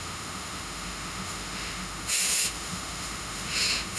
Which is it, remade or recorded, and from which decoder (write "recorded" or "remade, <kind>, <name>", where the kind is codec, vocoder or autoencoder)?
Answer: remade, autoencoder, DAC-VAE